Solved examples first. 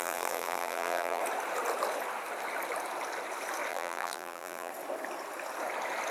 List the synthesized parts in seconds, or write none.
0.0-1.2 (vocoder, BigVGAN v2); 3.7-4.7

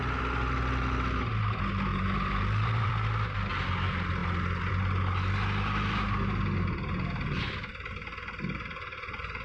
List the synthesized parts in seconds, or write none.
1.9-2.9 (vocoder, BigVGAN v2)

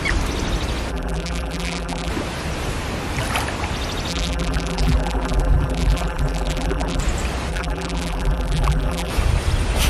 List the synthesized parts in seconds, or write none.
0.9-2.1 (vocoder, BigVGAN v2); 4.1-7.0; 7.5-9.1